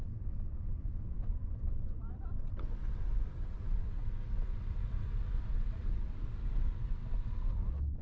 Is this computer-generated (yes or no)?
yes